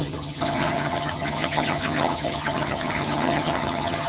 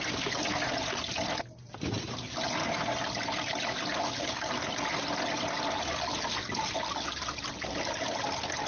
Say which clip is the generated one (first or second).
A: first